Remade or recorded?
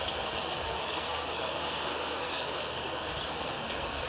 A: remade